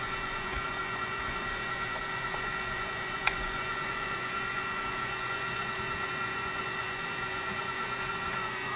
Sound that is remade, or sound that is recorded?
remade